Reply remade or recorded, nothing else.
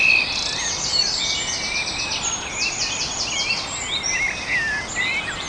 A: recorded